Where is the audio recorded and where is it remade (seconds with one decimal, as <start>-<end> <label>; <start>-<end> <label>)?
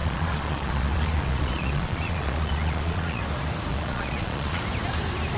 0.0-3.2 remade; 3.2-3.7 recorded; 3.7-4.6 remade; 4.6-5.4 recorded